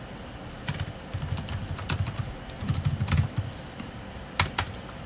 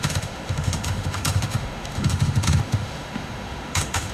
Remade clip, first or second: second